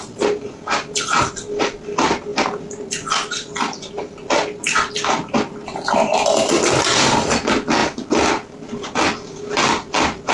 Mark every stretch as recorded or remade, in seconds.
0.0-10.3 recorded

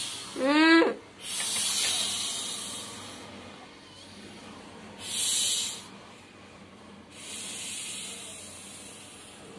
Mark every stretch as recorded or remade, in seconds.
0.0-9.6 recorded

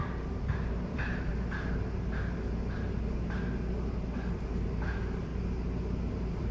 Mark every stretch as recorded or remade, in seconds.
0.0-1.3 remade; 1.3-4.5 recorded; 4.5-5.3 remade; 5.3-6.1 recorded; 6.1-6.5 remade

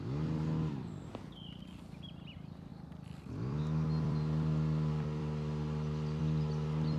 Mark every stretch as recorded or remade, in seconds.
0.0-2.7 recorded; 2.7-6.2 remade; 6.2-7.0 recorded

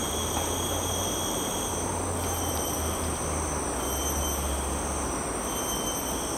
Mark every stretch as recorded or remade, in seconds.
0.0-1.3 remade; 1.3-2.5 recorded; 2.5-3.1 remade; 3.1-6.4 recorded

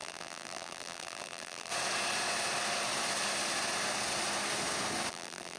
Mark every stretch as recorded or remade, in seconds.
0.0-1.7 remade; 1.7-5.1 recorded; 5.1-5.6 remade

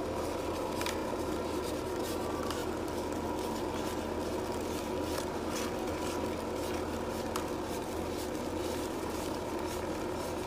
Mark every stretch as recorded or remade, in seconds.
0.0-1.0 recorded; 1.0-1.6 remade; 1.6-8.6 recorded; 8.6-9.5 remade; 9.5-10.5 recorded

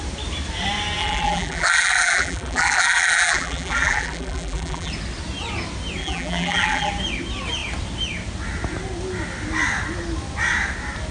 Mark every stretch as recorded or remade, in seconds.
0.0-1.0 recorded; 1.0-4.9 remade; 4.9-6.0 recorded; 6.0-6.9 remade; 6.9-11.1 recorded